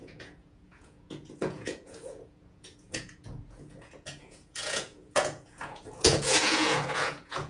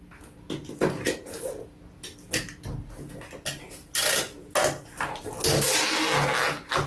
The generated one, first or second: first